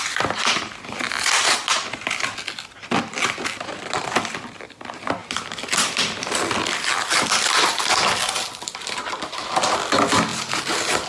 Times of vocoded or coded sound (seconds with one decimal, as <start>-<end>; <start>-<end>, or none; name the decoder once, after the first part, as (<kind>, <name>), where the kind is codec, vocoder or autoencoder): 5.2-7.4 (vocoder, BigVGAN v2); 10.3-11.1